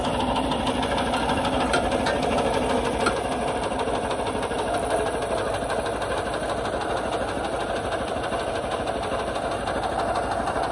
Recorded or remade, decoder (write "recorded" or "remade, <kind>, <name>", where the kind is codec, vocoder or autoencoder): recorded